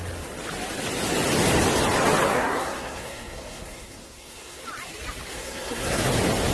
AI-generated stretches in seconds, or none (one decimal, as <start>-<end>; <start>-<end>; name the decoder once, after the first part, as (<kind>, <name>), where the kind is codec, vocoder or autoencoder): 2.3-4.6 (codec, SNAC); 5.3-6.1